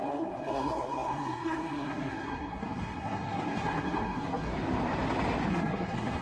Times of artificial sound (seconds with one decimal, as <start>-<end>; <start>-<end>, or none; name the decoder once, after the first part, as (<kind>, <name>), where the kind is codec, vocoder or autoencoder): 0.0-4.5 (codec, SNAC); 5.5-6.2